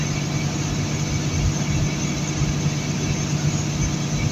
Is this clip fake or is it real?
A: real